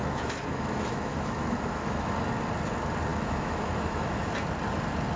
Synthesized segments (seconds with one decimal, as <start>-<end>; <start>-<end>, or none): 0.0-2.1; 3.1-4.3